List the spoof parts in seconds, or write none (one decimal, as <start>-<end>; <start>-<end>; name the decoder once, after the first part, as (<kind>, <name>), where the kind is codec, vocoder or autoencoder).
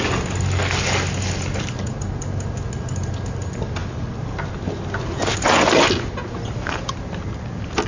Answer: none